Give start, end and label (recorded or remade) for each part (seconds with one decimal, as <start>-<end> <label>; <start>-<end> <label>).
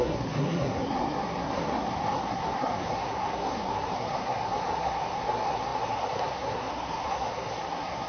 0.0-8.1 remade